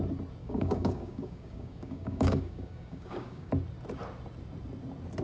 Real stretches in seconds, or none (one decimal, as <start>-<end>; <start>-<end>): 0.0-0.4; 3.5-5.2